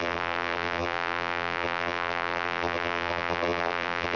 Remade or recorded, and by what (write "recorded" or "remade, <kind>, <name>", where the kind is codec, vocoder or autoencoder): remade, vocoder, BigVGAN v2